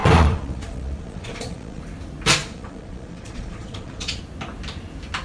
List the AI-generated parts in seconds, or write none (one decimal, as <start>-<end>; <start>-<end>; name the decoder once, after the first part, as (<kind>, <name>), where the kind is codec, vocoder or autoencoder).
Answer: 0.0-1.8 (vocoder, Vocos); 2.4-4.2

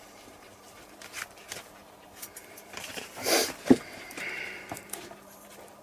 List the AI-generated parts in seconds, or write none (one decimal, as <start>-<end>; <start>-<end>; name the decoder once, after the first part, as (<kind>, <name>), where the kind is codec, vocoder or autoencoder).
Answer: 0.0-5.8 (vocoder, BigVGAN v2)